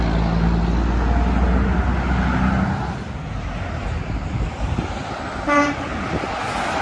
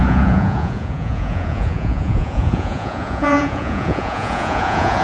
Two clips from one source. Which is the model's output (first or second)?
second